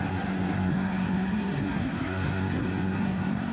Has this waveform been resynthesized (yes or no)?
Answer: yes